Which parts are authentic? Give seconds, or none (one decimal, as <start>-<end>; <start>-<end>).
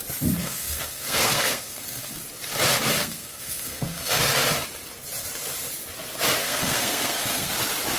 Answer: 0.0-0.4; 2.2-2.9; 4.2-6.4; 7.5-8.0